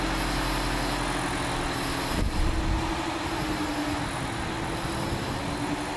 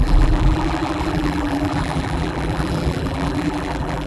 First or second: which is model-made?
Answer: second